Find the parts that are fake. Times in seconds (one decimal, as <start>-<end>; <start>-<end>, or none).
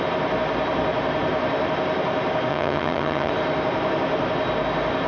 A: 2.5-3.3